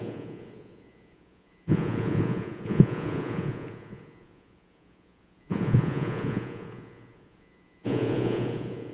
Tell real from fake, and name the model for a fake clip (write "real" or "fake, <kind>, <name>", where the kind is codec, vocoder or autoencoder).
fake, vocoder, Vocos